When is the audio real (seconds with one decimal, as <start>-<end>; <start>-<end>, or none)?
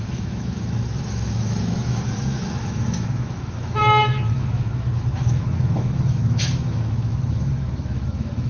none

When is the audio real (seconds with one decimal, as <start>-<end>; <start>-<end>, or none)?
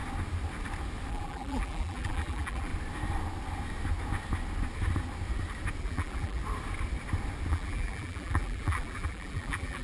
0.0-1.1; 2.7-5.8; 6.4-7.5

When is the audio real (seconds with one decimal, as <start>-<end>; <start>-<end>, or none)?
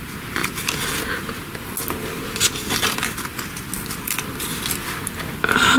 0.0-5.8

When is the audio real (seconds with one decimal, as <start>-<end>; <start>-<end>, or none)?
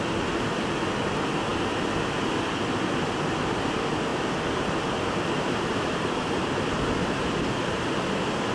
0.0-4.1; 7.9-8.5